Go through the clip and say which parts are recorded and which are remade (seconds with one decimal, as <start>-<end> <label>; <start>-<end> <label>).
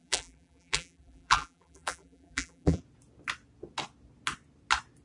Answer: 0.0-2.8 remade; 2.8-5.0 recorded